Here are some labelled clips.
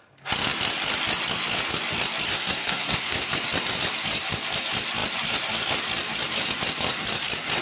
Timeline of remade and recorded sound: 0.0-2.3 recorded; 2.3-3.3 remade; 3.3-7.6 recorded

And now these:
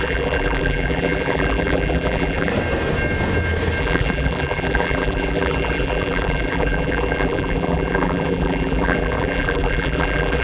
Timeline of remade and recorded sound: 0.0-2.5 remade; 2.5-3.8 recorded; 3.8-10.4 remade

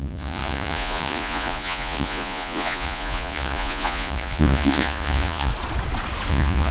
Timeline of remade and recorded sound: 0.0-5.5 remade; 5.5-6.3 recorded; 6.3-6.7 remade

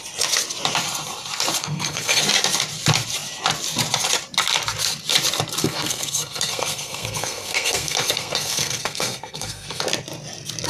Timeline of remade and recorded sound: 0.0-1.6 recorded; 1.6-2.2 remade; 2.2-5.6 recorded; 5.6-9.8 remade; 9.8-10.7 recorded

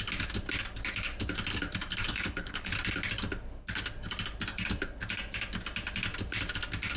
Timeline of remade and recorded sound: 0.0-2.1 recorded; 2.1-2.7 remade; 2.7-7.0 recorded